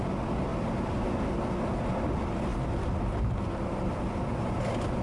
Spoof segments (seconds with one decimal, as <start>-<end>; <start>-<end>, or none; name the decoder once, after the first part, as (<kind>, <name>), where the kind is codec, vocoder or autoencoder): none